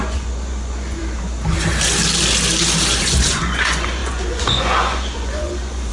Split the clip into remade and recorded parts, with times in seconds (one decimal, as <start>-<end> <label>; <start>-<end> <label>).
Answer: 0.0-1.0 remade; 1.0-3.0 recorded; 3.0-5.9 remade

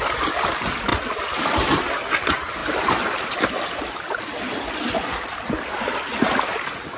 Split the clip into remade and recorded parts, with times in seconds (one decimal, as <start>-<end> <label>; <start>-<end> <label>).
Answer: 0.0-7.0 recorded

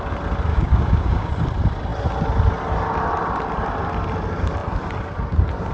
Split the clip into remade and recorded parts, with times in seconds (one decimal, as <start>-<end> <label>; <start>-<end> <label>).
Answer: 0.0-0.5 recorded; 0.5-1.3 remade; 1.3-5.7 recorded

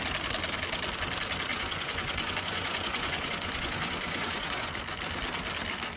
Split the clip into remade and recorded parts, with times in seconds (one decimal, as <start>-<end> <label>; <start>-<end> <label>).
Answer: 0.0-1.5 recorded; 1.5-4.7 remade; 4.7-6.0 recorded

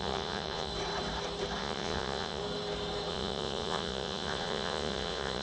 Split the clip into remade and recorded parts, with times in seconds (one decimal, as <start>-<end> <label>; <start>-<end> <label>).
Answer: 0.0-0.7 remade; 0.7-1.6 recorded; 1.6-2.4 remade; 2.4-3.1 recorded; 3.1-5.4 remade